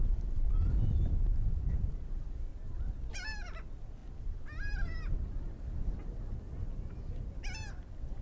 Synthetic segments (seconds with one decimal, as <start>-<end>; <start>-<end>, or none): 0.0-1.9; 2.5-3.1